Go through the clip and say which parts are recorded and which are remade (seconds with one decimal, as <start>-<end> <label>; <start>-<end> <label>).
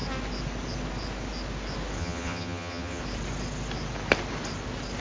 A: 0.0-2.0 recorded; 2.0-3.0 remade; 3.0-5.0 recorded